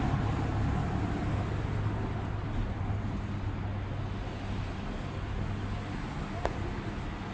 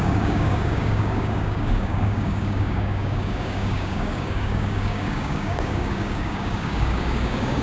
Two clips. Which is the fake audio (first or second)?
second